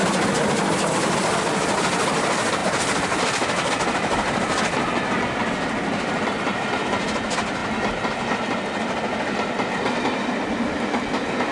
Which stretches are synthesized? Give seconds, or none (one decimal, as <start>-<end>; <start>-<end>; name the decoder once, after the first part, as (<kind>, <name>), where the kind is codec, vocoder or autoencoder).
none